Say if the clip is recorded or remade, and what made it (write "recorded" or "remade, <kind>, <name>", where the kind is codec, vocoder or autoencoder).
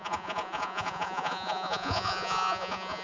remade, vocoder, Vocos